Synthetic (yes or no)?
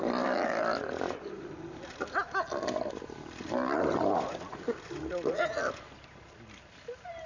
no